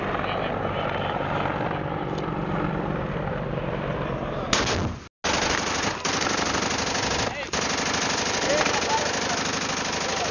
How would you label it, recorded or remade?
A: recorded